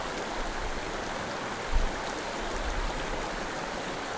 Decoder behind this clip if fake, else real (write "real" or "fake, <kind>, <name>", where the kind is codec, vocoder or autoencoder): real